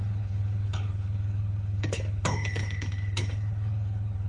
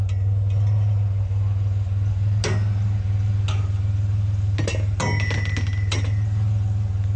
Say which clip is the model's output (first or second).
first